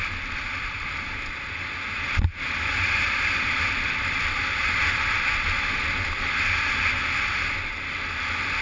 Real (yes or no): yes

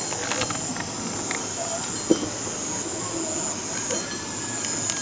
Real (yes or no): yes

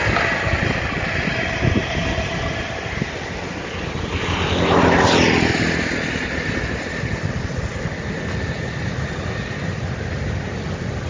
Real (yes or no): yes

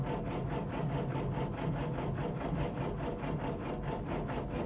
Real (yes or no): yes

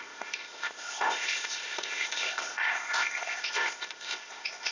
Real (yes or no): no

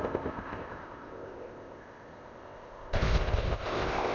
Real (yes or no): no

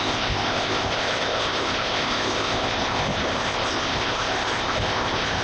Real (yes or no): no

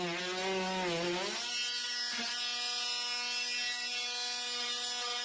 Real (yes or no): yes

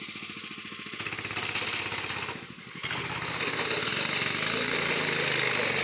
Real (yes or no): yes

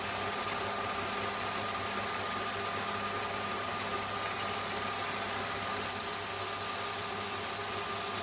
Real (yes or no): yes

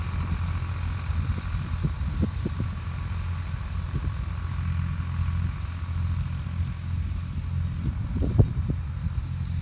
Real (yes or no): yes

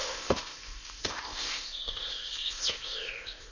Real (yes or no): no